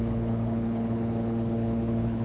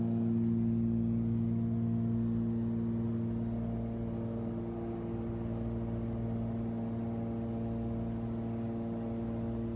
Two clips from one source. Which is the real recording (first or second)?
second